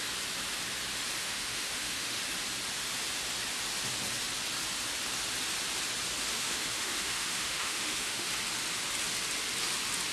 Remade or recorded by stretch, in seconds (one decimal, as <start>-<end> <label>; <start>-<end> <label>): 0.0-1.2 recorded; 1.2-2.2 remade; 2.2-6.3 recorded; 6.3-8.3 remade; 8.3-10.1 recorded